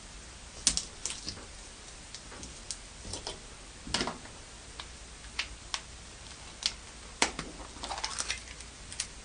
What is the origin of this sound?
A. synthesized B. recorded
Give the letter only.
B